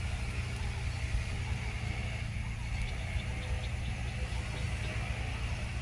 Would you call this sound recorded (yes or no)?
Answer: yes